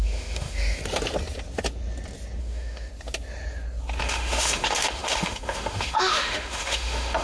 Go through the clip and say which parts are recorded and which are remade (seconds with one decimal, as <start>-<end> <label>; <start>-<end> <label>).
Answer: 0.0-0.8 remade; 0.8-2.4 recorded; 2.4-2.9 remade; 2.9-4.0 recorded; 4.0-7.2 remade